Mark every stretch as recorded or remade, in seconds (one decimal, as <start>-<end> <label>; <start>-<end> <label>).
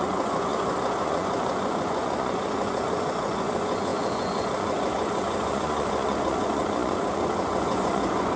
0.0-8.4 remade